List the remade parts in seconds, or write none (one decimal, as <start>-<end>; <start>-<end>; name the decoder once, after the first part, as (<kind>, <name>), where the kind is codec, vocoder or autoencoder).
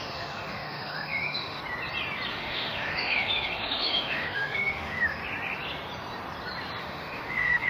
0.0-1.6 (autoencoder, DAC-VAE); 2.3-5.2; 6.8-7.7